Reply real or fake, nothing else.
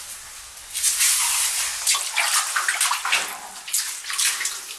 real